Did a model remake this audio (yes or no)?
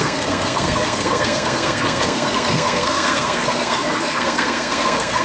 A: yes